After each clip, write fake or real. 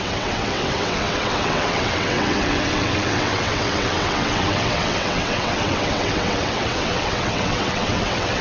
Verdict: fake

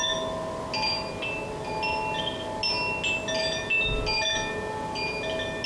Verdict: real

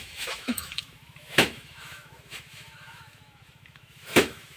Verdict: fake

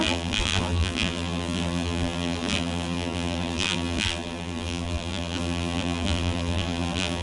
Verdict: fake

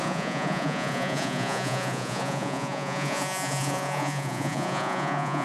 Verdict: fake